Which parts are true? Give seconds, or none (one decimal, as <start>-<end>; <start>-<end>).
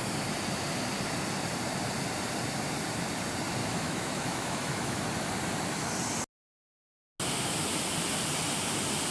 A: 0.0-3.6; 5.0-9.1